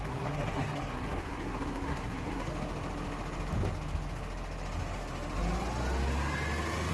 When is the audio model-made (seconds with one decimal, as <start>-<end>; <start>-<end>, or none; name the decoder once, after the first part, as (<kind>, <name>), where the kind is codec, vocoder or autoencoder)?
0.0-2.5 (codec, SNAC)